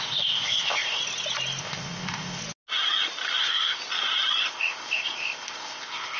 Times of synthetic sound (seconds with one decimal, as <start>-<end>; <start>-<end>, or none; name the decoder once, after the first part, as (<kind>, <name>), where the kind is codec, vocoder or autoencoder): 0.0-1.0 (codec, ZipCodec); 1.6-2.4; 3.4-3.8; 4.5-6.2